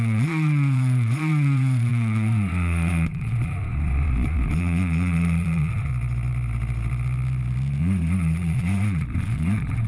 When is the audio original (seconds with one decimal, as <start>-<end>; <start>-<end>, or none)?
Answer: 5.9-7.8